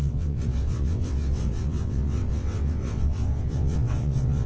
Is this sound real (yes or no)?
no